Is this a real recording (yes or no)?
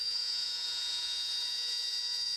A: no